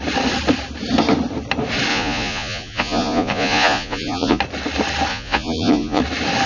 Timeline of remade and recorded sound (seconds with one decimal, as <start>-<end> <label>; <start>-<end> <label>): 0.0-1.9 recorded; 1.9-4.4 remade; 4.4-5.1 recorded; 5.1-6.0 remade; 6.0-6.5 recorded